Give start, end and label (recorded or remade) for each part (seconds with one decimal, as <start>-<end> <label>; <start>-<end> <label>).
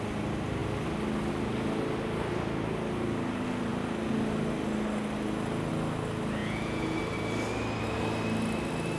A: 0.0-6.4 recorded; 6.4-7.0 remade; 7.0-9.0 recorded